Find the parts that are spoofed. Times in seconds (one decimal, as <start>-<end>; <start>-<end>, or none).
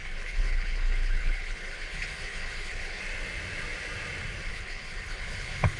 0.0-3.0; 4.5-5.8